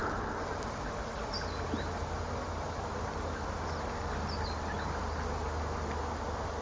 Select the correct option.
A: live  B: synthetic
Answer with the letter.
A